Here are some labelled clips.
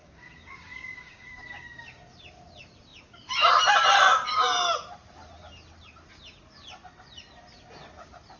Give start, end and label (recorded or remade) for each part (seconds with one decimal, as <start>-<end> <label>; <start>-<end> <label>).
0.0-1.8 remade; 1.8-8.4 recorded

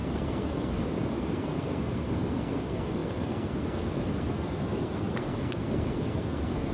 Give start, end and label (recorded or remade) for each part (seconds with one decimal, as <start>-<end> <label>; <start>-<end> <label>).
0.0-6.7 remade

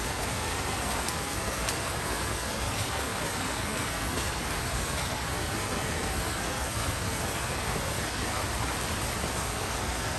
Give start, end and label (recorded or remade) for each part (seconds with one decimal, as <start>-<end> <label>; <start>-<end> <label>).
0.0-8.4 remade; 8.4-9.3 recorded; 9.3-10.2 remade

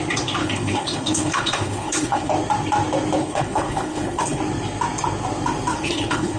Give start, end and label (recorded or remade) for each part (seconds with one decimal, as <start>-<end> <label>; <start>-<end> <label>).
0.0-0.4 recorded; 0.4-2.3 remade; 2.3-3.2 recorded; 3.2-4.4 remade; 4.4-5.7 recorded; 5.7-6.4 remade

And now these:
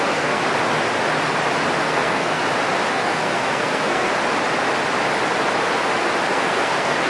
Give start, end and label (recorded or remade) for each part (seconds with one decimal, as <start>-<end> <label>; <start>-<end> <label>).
0.0-0.4 remade; 0.4-1.8 recorded; 1.8-2.4 remade; 2.4-2.9 recorded; 2.9-4.1 remade; 4.1-6.3 recorded; 6.3-7.1 remade